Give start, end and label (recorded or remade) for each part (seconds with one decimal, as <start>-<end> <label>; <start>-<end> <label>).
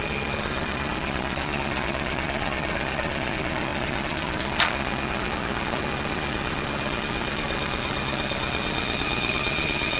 0.0-10.0 remade